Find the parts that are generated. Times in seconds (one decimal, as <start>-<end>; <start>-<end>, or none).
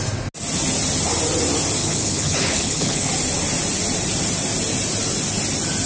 1.8-3.1